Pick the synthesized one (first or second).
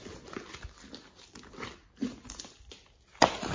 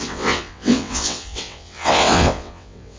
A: second